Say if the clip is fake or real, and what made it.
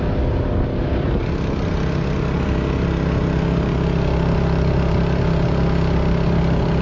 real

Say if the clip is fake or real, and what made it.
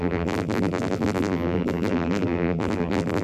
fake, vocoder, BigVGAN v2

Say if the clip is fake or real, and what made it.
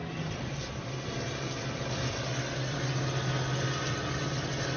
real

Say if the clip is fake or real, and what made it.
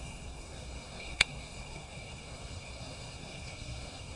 fake, codec, SNAC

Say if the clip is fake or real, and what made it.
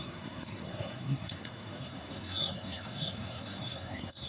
fake, codec, SNAC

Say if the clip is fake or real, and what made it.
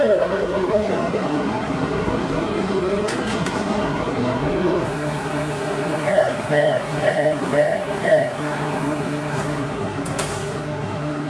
fake, codec, SNAC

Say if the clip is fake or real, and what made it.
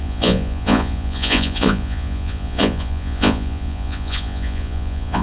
fake, vocoder, Vocos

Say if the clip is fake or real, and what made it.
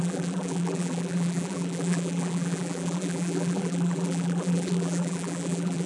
fake, vocoder, BigVGAN v2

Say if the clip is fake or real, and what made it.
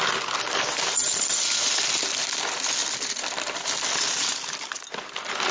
fake, vocoder, BigVGAN v2